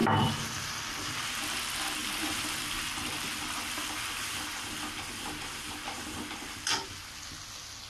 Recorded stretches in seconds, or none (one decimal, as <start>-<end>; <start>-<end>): 1.4-2.0; 6.7-7.9